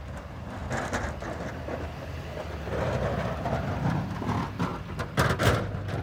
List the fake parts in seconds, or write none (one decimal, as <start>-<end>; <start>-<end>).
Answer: 0.0-0.6; 4.2-4.7; 5.3-6.0